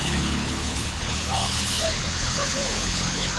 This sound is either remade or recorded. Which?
remade